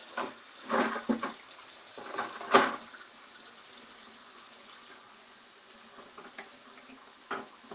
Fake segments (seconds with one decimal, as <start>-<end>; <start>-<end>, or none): 4.2-6.3